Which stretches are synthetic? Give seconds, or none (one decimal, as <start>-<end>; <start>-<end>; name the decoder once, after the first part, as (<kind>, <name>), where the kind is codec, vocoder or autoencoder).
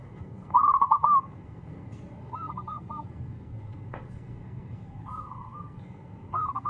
0.0-6.7 (codec, SNAC)